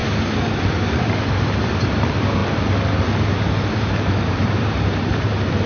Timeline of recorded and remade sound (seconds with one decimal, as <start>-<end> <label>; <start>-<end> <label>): 0.0-0.6 recorded; 0.6-2.4 remade; 2.4-3.8 recorded; 3.8-5.7 remade